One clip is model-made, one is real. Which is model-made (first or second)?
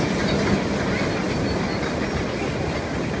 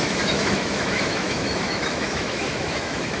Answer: second